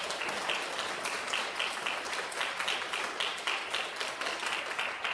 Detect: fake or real real